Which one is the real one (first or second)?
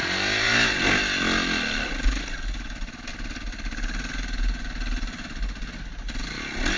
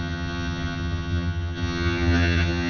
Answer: first